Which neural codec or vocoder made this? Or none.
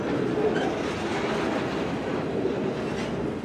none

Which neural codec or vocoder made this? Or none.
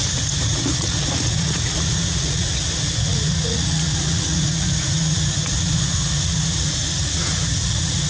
vocoder, Vocos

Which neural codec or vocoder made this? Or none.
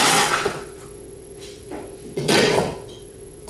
vocoder, WaveNeXt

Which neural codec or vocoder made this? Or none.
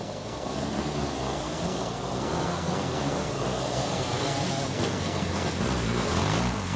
codec, SNAC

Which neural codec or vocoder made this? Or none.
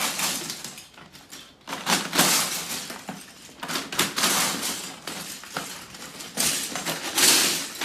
none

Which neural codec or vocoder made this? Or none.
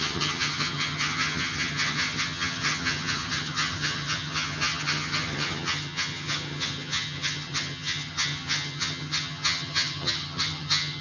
vocoder, HiFi-GAN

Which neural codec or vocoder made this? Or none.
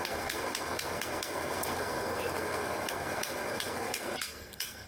codec, SNAC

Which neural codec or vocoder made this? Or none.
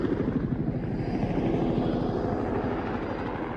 none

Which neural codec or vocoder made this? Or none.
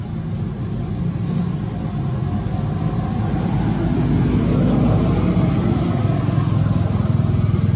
none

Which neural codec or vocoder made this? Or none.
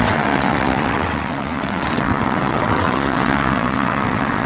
vocoder, WaveNeXt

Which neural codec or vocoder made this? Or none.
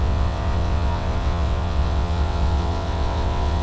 vocoder, WaveNeXt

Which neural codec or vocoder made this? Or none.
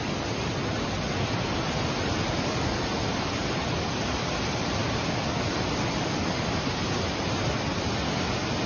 none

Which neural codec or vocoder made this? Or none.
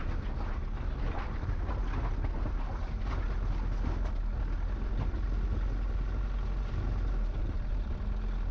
none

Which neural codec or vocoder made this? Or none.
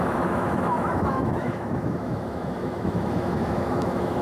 autoencoder, DAC-VAE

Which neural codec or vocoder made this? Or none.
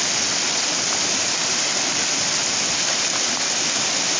none